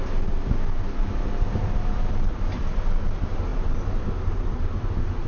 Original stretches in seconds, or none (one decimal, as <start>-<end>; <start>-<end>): 0.0-5.3